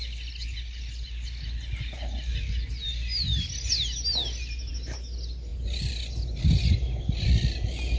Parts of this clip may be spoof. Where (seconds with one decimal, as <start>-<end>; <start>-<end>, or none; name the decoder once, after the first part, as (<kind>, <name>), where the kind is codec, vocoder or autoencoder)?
none